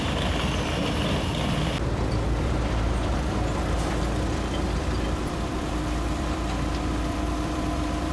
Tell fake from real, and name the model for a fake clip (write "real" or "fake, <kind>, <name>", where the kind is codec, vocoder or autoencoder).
fake, vocoder, BigVGAN v2